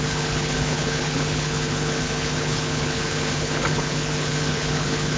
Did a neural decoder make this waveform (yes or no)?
yes